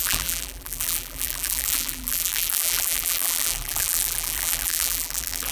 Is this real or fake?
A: fake